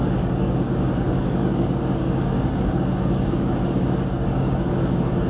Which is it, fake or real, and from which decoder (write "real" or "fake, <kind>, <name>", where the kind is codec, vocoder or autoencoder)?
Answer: fake, codec, DAC